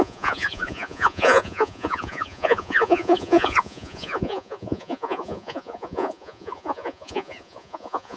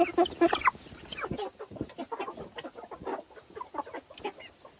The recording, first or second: second